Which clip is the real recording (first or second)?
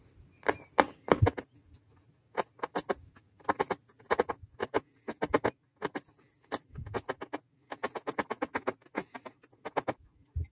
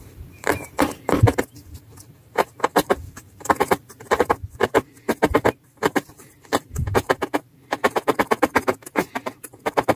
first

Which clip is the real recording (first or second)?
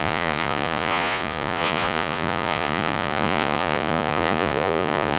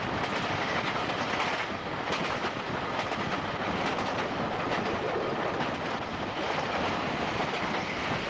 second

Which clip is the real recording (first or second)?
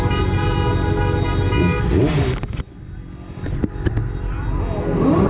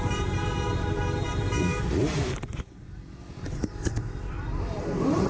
first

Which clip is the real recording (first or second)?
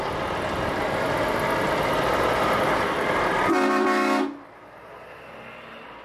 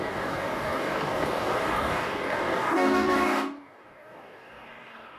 first